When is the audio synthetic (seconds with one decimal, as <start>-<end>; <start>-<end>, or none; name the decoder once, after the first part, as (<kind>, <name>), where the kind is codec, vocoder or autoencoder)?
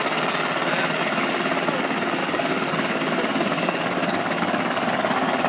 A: 2.2-5.5 (codec, DAC)